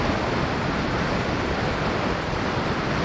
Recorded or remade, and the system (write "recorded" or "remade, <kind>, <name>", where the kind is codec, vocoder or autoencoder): recorded